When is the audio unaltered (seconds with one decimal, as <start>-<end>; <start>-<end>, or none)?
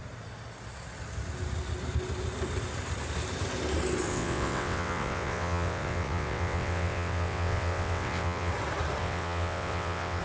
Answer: 0.0-4.1; 8.5-9.0